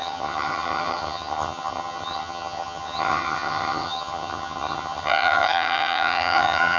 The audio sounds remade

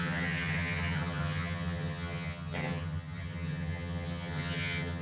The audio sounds remade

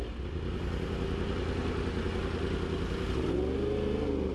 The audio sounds recorded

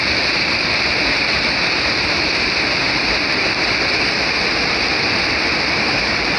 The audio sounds recorded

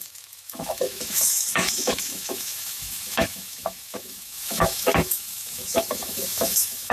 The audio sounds remade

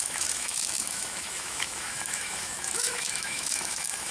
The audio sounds remade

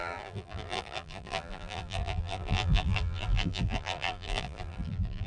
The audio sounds remade